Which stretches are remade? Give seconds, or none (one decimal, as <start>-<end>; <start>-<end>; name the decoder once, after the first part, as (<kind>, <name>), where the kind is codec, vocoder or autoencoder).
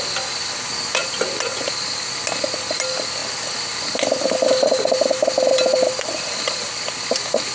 1.0-1.5 (vocoder, BigVGAN v2); 5.5-7.5